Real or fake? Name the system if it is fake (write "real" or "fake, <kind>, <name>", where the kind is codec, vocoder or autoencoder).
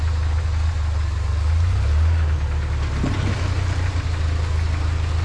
real